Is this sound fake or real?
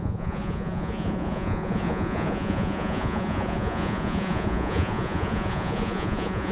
fake